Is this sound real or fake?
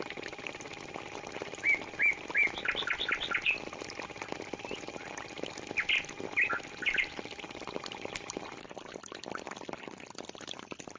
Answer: real